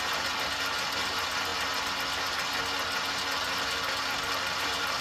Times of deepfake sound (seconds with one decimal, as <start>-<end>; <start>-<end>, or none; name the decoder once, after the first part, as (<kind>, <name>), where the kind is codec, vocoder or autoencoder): 0.0-1.5 (vocoder, BigVGAN v2); 4.3-5.0